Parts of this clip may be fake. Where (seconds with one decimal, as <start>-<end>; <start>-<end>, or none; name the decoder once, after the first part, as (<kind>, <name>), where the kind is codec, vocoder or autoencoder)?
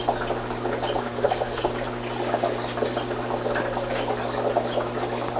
1.0-1.7 (codec, SNAC)